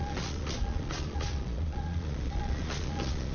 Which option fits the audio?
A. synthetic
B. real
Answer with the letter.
A